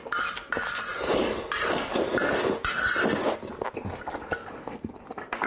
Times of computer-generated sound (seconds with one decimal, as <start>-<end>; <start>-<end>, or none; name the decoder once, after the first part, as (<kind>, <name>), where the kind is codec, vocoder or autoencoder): 0.9-2.7 (vocoder, BigVGAN v2); 4.4-4.9